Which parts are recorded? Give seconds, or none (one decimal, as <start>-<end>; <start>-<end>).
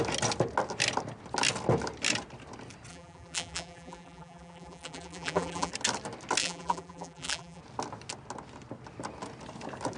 0.0-2.9; 5.7-6.4; 7.6-10.0